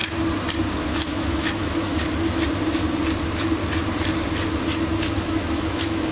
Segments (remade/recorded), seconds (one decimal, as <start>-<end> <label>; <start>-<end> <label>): 0.0-0.7 recorded; 0.7-1.9 remade; 1.9-5.2 recorded; 5.2-6.1 remade